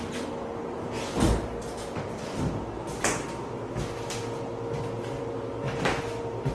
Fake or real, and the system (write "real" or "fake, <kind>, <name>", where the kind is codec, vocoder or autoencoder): real